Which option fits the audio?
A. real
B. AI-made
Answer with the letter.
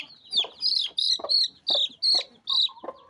A